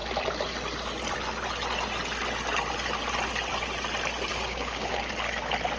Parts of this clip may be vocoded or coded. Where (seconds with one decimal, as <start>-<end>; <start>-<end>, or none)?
4.3-5.1